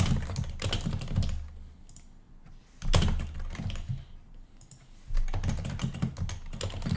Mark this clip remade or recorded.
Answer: recorded